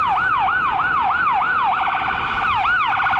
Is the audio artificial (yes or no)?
no